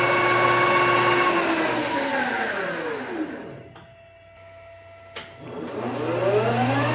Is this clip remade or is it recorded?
recorded